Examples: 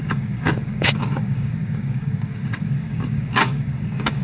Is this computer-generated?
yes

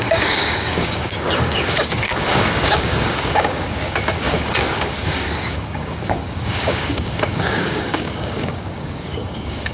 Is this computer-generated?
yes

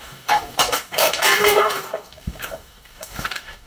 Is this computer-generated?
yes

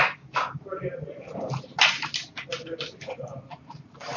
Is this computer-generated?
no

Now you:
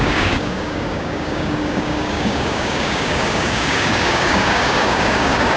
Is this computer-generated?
yes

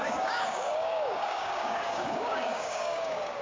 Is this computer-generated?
yes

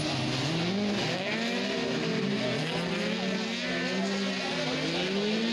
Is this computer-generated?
no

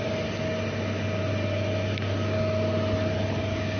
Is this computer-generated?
no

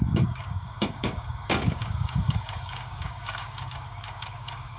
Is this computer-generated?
yes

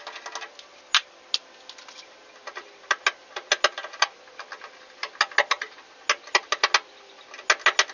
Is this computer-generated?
no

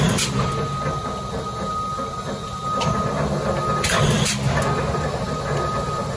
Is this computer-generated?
no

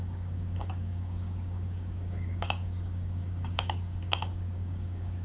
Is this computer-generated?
yes